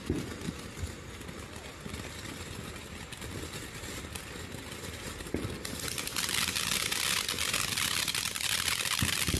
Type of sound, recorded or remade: recorded